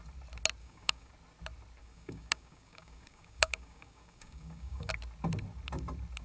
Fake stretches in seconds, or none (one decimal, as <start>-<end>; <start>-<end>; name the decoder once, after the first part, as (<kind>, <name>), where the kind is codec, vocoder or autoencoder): 0.6-1.1 (codec, DAC); 1.8-4.9